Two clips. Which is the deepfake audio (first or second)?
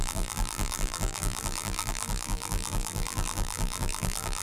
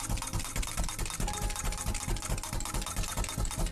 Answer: first